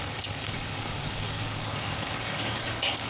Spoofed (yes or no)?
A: yes